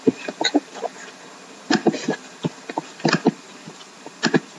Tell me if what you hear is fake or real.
real